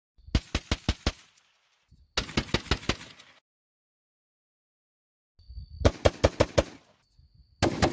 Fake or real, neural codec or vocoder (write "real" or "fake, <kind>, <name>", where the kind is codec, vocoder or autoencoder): real